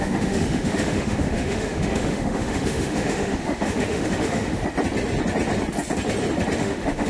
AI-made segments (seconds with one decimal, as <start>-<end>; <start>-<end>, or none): 0.0-4.6; 6.6-7.1